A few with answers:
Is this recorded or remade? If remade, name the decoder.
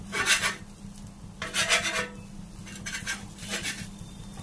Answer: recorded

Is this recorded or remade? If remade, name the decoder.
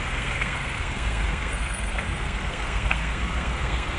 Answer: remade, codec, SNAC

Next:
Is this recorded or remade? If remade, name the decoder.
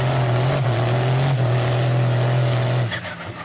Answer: recorded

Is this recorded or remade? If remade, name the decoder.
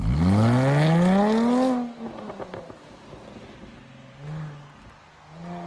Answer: recorded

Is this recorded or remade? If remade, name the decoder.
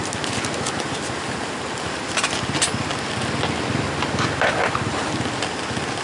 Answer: recorded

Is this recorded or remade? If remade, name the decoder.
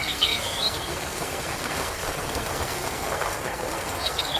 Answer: remade, codec, SNAC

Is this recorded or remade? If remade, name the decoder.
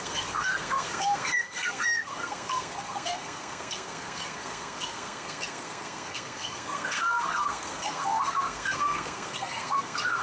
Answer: remade, codec, SNAC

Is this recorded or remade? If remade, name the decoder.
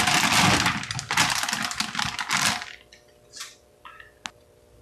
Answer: recorded